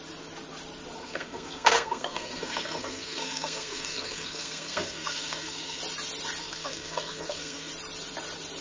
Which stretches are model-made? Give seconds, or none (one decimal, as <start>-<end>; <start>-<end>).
1.0-5.8; 6.4-7.7